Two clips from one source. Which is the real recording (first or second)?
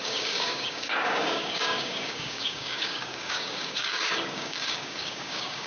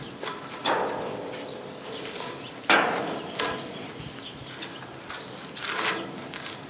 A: second